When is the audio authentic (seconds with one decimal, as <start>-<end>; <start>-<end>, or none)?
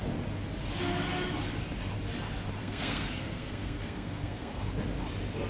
0.0-2.6; 4.7-5.5